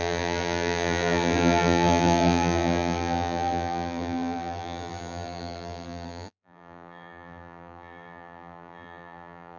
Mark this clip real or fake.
fake